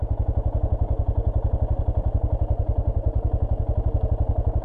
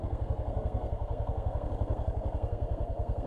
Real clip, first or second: first